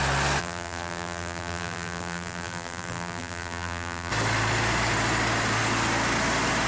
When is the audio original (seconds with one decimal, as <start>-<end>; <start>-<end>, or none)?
0.0-0.4; 4.1-6.7

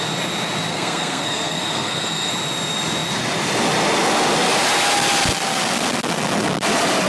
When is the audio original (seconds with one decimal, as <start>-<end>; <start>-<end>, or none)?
0.0-0.7; 2.3-7.1

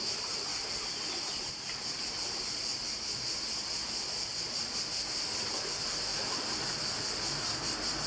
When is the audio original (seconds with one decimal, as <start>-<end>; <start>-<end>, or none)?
0.0-8.1

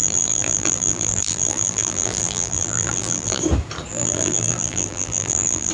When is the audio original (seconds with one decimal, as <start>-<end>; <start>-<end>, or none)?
3.4-3.9

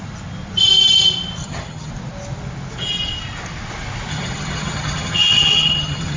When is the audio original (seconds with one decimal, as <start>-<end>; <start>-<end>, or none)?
0.0-1.4; 1.9-4.1

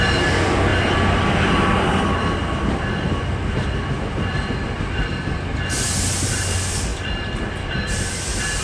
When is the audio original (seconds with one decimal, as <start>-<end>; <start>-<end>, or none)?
0.0-8.6

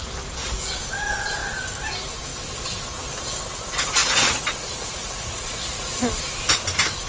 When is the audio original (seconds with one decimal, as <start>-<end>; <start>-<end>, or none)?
0.0-4.0; 6.1-7.1

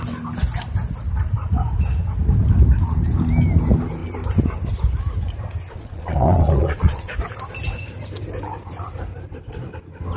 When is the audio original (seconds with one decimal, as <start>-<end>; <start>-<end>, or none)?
0.0-5.7; 7.1-10.2